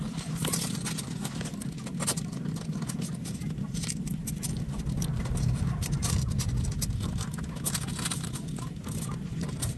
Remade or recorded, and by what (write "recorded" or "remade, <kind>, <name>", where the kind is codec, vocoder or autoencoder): recorded